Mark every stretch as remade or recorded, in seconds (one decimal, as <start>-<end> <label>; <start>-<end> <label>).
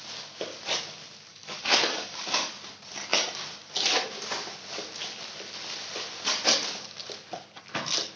0.0-1.3 recorded; 1.3-2.5 remade; 2.5-8.2 recorded